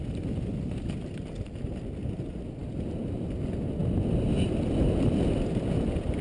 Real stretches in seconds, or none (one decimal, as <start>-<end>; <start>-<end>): 0.0-6.2